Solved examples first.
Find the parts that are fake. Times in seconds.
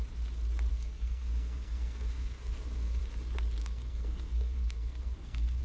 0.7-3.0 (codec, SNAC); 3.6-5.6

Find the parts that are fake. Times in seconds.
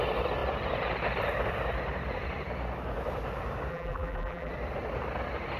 3.7-4.5 (vocoder, BigVGAN v2)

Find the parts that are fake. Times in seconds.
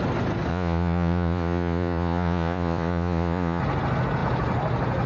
0.5-3.6 (vocoder, Vocos)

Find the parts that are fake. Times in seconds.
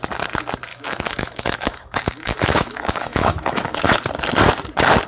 0.7-3.8 (autoencoder, DAC-VAE)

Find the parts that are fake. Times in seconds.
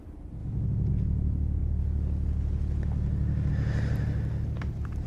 none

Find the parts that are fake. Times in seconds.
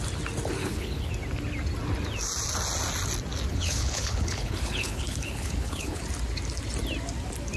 0.6-1.1 (codec, HILCodec); 3.5-6.0